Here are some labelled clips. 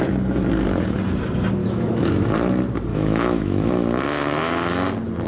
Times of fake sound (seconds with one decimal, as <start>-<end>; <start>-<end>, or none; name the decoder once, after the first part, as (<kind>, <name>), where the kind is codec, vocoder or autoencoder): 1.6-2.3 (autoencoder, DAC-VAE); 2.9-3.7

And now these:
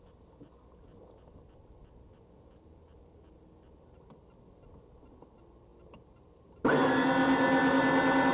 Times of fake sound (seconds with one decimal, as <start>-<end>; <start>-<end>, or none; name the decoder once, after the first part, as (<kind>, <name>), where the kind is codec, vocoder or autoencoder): none

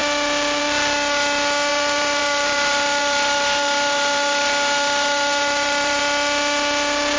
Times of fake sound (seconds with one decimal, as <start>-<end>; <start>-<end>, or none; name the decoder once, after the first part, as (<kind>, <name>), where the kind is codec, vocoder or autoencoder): 1.7-6.0 (vocoder, BigVGAN v2)

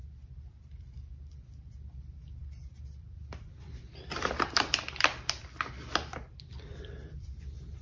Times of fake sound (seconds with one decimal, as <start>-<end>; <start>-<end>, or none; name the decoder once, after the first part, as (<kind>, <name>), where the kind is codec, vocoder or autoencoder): 0.0-7.8 (vocoder, BigVGAN v2)

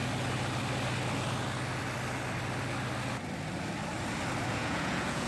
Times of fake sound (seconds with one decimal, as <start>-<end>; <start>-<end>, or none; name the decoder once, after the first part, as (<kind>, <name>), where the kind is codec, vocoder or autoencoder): 4.6-5.3 (vocoder, Vocos)

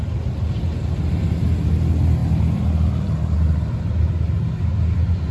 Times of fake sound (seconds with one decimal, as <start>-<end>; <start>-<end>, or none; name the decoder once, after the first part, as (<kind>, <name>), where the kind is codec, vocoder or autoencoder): none